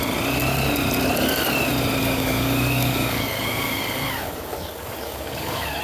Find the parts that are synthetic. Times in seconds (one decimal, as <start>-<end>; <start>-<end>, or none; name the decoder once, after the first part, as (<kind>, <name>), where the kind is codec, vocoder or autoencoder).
2.0-5.8 (codec, DAC)